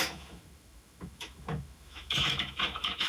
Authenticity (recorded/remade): remade